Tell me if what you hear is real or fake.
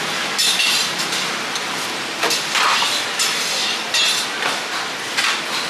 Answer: fake